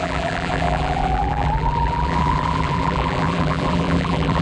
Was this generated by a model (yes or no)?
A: yes